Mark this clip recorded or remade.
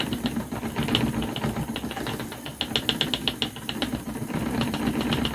recorded